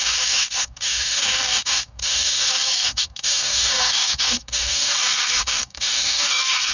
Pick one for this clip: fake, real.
fake